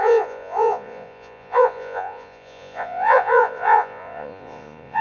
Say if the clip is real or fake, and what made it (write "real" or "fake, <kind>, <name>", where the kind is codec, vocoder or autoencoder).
fake, vocoder, Vocos